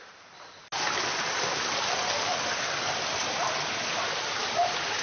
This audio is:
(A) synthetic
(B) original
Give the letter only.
B